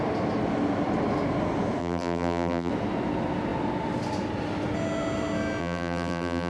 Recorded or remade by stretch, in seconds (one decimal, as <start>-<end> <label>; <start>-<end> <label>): 0.0-1.8 recorded; 1.8-2.7 remade; 2.7-5.6 recorded; 5.6-6.5 remade